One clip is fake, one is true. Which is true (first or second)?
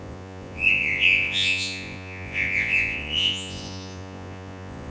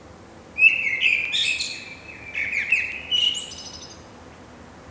second